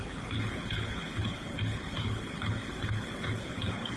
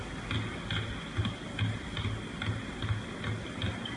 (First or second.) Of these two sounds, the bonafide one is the second